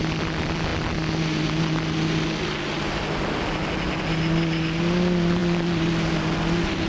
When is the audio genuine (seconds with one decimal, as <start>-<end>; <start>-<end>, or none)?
0.0-6.9